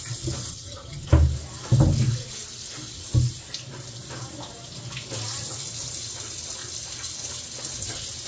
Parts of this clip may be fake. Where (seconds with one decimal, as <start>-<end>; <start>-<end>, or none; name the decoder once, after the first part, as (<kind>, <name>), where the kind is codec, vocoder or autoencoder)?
0.5-1.1 (vocoder, HiFi-GAN)